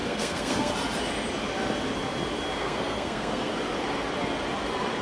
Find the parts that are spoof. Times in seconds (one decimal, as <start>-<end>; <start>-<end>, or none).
0.0-0.7; 2.6-3.5